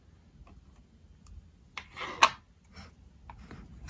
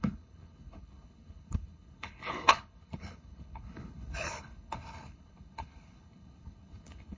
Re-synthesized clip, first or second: second